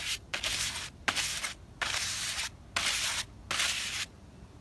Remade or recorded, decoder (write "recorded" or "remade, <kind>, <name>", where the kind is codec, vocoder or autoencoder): recorded